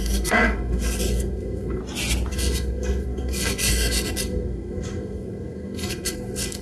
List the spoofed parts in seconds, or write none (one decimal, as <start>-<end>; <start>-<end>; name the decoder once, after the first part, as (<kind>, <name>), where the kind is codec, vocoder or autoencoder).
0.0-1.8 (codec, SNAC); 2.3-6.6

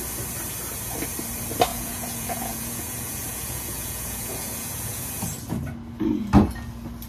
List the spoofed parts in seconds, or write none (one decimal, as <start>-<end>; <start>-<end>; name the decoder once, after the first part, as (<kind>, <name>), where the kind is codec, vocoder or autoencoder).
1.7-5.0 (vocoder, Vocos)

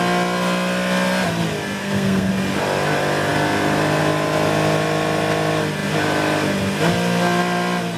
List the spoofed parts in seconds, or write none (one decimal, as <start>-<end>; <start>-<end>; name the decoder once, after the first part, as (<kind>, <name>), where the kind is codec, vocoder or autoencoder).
1.8-2.3 (codec, SNAC)